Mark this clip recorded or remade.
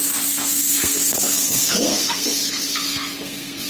remade